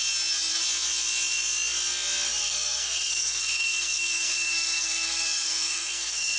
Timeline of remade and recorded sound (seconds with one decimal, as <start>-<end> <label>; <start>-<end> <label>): 0.0-2.4 recorded; 2.4-6.4 remade